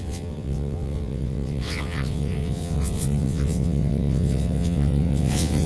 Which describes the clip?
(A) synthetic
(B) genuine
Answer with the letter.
A